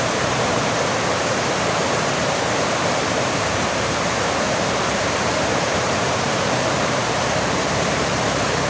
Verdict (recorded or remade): remade